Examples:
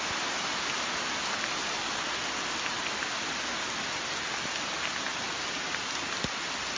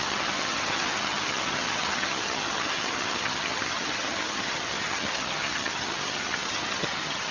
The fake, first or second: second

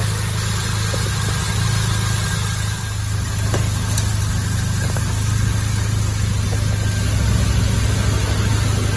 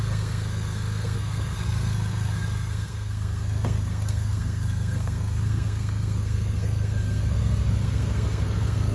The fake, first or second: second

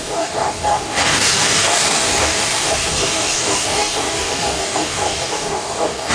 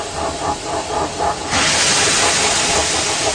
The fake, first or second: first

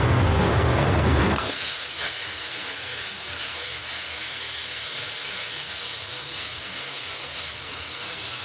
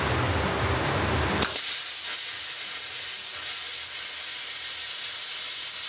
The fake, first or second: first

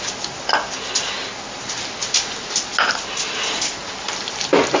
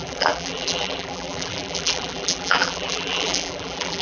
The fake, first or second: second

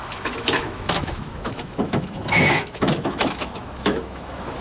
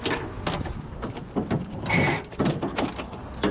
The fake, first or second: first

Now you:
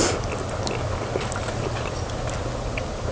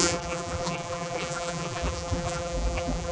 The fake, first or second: second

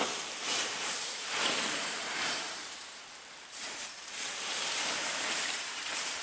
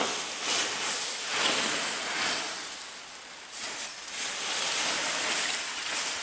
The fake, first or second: first